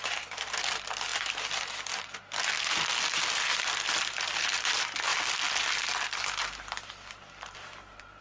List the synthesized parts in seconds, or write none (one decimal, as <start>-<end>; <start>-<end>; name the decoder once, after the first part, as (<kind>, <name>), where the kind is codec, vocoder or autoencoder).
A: none